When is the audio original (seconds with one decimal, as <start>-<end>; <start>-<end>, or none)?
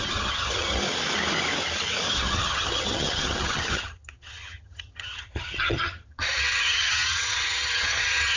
0.8-2.1